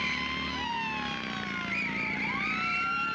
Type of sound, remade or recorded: recorded